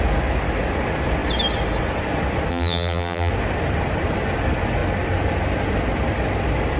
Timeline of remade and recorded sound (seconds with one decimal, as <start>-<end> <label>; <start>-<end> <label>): 0.0-2.5 recorded; 2.5-3.3 remade; 3.3-6.8 recorded